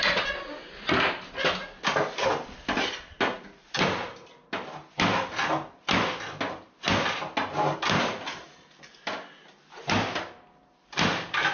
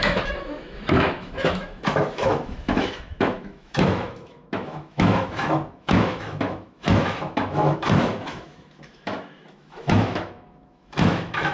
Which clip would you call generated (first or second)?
second